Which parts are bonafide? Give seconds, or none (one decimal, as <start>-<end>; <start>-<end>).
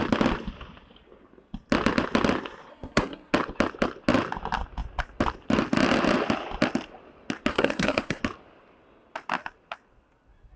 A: 0.0-2.7; 3.3-7.5; 8.2-10.6